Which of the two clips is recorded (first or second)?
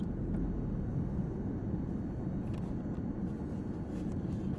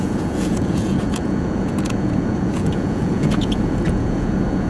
first